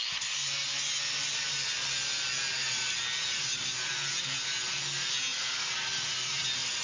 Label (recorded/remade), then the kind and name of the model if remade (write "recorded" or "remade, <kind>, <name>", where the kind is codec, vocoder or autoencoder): recorded